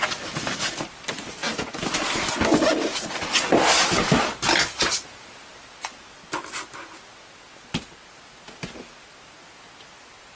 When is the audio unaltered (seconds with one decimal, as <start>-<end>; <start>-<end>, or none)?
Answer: 0.0-10.4